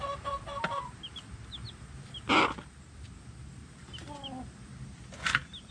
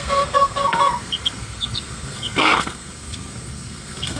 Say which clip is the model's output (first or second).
second